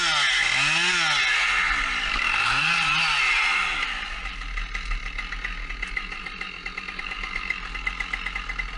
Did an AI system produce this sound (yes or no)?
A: no